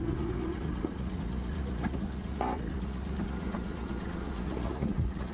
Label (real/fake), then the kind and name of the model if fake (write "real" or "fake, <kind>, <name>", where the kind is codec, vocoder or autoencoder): fake, vocoder, Vocos